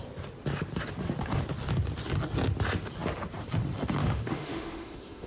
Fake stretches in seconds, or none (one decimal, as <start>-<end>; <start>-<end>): 4.0-5.3